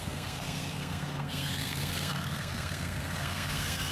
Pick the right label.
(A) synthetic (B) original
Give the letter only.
A